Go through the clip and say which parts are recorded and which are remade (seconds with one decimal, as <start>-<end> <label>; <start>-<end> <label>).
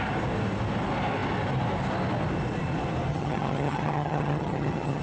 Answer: 0.0-3.1 recorded; 3.1-5.0 remade